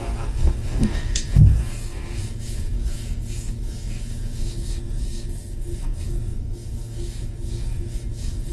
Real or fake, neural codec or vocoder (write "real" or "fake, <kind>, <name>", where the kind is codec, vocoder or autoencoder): fake, codec, SNAC